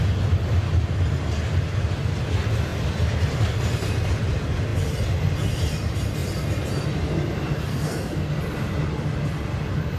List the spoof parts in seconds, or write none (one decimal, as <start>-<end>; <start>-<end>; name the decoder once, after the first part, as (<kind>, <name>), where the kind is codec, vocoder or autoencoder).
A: 7.7-8.3 (codec, SNAC)